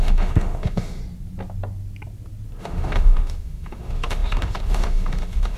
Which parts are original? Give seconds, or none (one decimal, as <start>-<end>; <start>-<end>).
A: 1.0-2.6